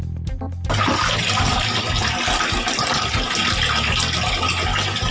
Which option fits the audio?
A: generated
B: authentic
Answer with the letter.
B